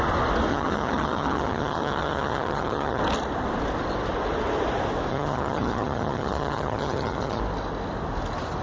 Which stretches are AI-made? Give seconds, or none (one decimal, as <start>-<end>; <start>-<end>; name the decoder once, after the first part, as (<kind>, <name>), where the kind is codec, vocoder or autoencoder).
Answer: 0.5-3.0 (vocoder, HiFi-GAN); 5.1-7.4